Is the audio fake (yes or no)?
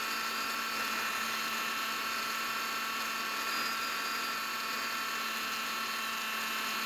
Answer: no